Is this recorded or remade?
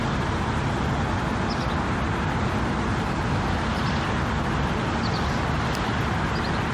recorded